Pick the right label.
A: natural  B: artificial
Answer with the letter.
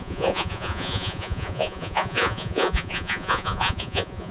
B